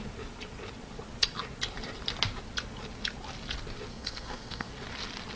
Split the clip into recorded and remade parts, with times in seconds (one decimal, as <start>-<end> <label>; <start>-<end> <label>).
0.0-3.9 recorded; 3.9-4.7 remade; 4.7-5.4 recorded